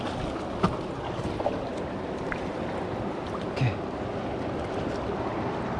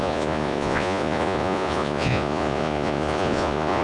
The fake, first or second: second